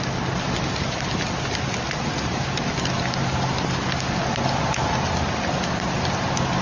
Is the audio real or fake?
real